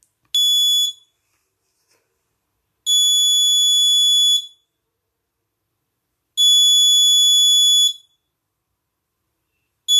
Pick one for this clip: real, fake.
real